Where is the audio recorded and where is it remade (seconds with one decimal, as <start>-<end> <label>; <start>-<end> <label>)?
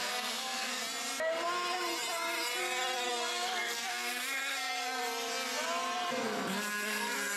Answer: 0.0-0.8 remade; 0.8-3.1 recorded; 3.1-5.0 remade; 5.0-6.1 recorded; 6.1-7.4 remade